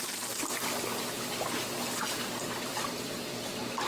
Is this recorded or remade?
recorded